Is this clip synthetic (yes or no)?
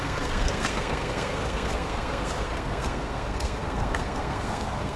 yes